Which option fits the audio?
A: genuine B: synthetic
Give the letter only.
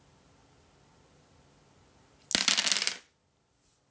A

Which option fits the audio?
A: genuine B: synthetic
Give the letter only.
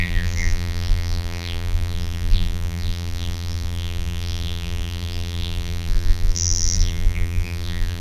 B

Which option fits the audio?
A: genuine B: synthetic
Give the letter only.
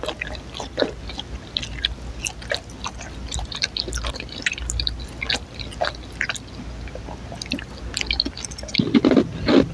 A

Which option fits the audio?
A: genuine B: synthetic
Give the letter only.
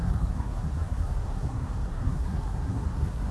B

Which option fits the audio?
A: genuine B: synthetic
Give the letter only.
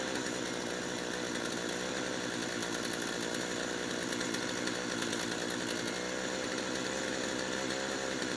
A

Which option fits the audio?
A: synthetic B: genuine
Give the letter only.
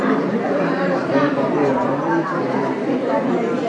A